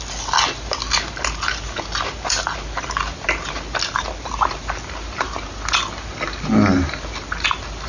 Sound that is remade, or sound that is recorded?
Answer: recorded